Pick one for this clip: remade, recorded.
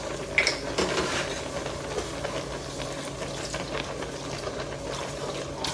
recorded